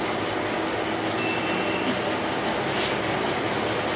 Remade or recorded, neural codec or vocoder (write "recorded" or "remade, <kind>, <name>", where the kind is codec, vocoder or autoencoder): recorded